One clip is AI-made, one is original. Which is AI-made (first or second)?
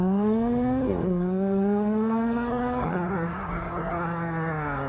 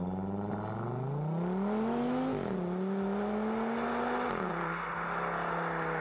first